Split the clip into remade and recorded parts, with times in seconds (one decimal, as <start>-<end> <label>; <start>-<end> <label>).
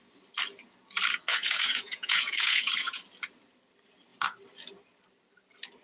0.0-1.3 recorded; 1.3-3.0 remade; 3.0-5.8 recorded